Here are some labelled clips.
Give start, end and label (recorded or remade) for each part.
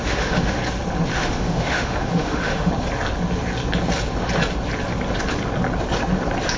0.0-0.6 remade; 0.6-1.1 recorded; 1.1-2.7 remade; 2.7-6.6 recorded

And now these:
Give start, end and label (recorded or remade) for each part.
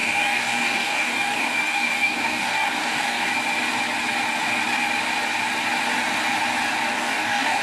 0.0-3.3 remade; 3.3-6.9 recorded; 6.9-7.6 remade